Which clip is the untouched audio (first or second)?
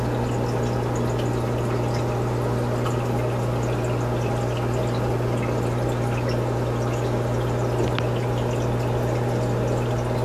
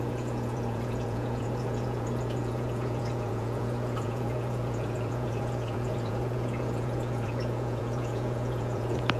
first